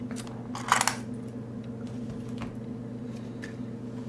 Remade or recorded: recorded